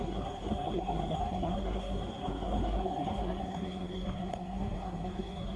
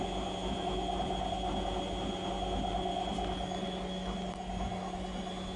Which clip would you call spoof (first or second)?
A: first